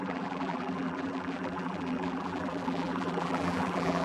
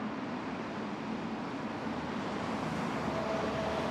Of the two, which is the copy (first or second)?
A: first